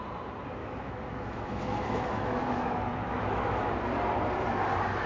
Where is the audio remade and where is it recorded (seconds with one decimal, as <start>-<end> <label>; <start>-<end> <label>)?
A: 0.0-0.6 recorded; 0.6-3.7 remade; 3.7-5.1 recorded